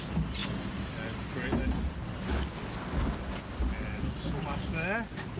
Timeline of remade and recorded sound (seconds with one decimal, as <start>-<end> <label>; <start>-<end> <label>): 0.0-5.4 recorded